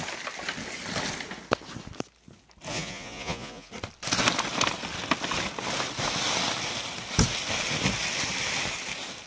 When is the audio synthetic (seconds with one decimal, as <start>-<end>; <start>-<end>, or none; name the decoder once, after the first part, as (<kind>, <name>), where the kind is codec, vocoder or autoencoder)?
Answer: 2.7-3.7 (vocoder, Vocos)